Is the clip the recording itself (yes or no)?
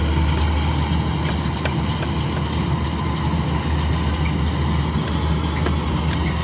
yes